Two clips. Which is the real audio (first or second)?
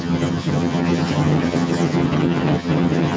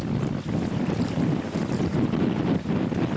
second